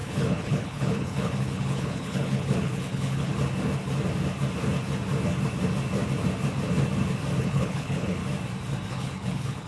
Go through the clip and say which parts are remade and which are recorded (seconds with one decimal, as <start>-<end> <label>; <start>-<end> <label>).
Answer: 0.0-3.3 remade; 3.3-7.4 recorded; 7.4-8.2 remade; 8.2-8.9 recorded; 8.9-9.7 remade